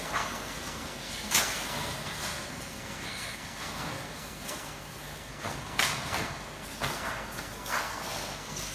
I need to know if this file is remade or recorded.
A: remade